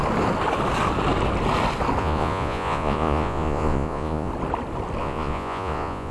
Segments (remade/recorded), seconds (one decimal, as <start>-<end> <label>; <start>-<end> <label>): 0.0-2.0 recorded; 2.0-4.3 remade; 4.3-5.0 recorded; 5.0-6.1 remade